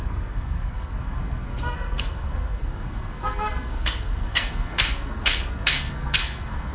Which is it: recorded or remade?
remade